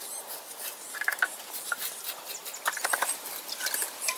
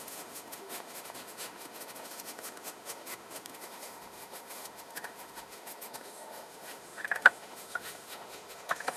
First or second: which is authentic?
first